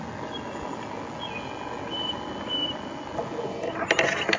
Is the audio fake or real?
real